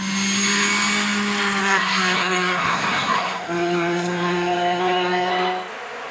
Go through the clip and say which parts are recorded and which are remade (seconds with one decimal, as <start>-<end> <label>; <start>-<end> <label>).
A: 0.0-1.6 recorded; 1.6-5.3 remade; 5.3-6.1 recorded